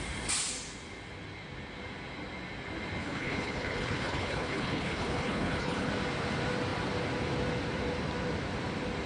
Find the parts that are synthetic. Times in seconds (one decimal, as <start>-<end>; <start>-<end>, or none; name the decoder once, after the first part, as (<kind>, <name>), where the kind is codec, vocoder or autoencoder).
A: 3.0-5.9 (codec, HILCodec)